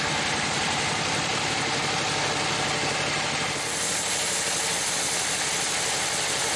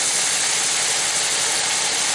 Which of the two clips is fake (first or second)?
first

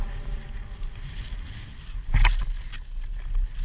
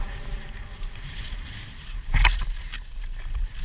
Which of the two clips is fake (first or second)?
second